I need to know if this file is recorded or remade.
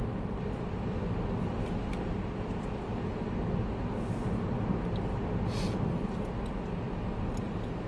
recorded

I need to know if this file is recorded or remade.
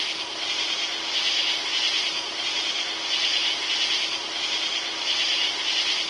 recorded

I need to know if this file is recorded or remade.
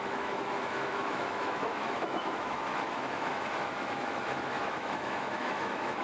remade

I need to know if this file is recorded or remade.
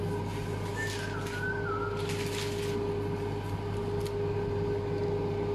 recorded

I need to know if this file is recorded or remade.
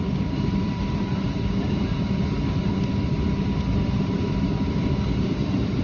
remade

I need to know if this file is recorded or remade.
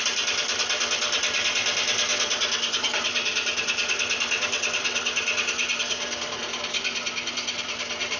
recorded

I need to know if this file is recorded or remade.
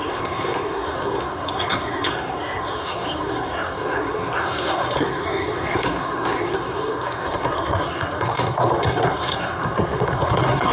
remade